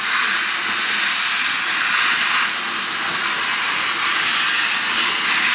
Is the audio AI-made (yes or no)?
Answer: no